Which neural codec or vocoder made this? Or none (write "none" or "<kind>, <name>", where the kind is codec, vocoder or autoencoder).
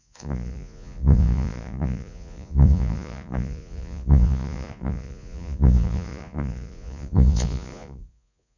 vocoder, Vocos